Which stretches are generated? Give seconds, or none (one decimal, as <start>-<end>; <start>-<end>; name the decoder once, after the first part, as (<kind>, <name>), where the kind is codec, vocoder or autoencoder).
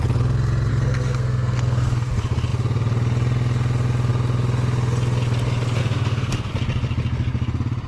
0.7-2.1 (codec, SNAC); 5.8-6.5